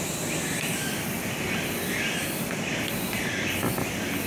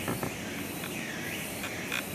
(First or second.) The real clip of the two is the first